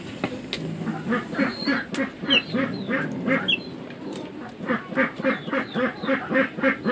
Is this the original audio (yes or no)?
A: yes